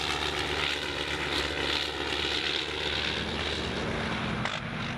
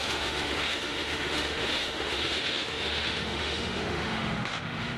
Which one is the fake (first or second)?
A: second